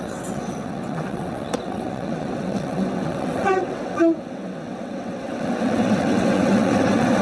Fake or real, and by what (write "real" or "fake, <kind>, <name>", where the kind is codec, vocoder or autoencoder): fake, vocoder, WaveNeXt